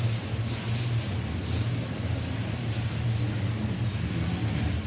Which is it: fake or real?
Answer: real